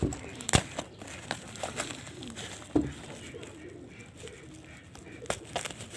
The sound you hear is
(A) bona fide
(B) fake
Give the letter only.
A